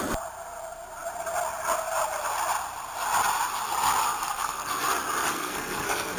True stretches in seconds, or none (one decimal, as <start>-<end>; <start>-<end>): 0.0-4.2; 4.7-5.2

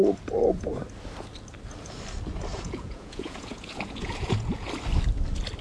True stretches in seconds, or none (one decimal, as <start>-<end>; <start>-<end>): 0.0-2.5; 4.7-5.6